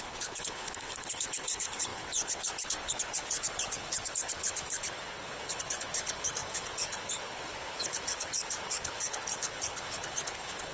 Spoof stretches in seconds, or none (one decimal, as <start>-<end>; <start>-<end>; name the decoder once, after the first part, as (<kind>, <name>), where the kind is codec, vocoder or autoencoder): 0.0-10.7 (codec, HILCodec)